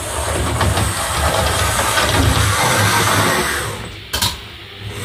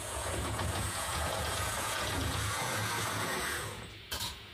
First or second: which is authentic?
first